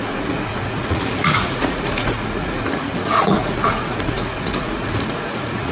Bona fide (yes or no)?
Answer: no